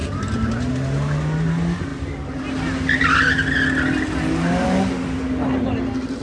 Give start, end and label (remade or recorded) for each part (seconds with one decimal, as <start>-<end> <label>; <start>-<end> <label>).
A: 0.0-0.7 remade; 0.7-6.2 recorded